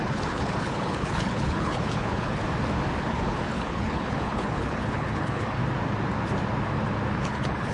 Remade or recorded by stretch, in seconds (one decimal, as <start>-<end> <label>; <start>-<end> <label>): 0.0-2.4 remade; 2.4-3.0 recorded; 3.0-5.6 remade; 5.6-7.1 recorded; 7.1-7.7 remade